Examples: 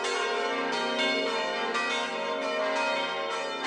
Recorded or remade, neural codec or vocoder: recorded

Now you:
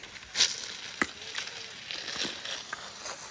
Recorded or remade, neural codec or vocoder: recorded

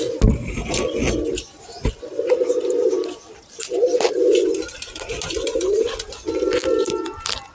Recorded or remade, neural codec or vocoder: recorded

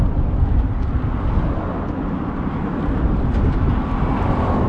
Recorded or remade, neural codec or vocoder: recorded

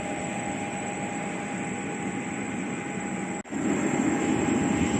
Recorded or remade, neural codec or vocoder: recorded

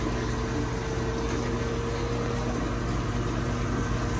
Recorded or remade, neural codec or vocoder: recorded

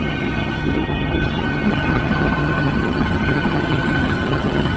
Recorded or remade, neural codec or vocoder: remade, vocoder, HiFi-GAN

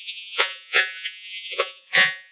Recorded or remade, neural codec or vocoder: remade, vocoder, Vocos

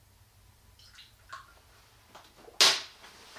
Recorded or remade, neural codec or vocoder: recorded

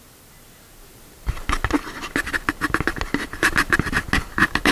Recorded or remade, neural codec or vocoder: recorded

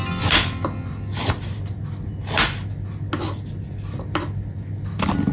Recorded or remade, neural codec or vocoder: recorded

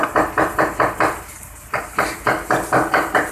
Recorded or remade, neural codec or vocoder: recorded